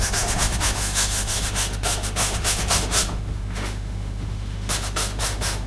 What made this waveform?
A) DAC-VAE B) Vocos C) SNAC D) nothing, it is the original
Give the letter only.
A